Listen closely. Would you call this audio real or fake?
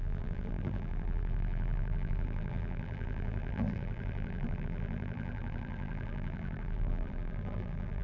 fake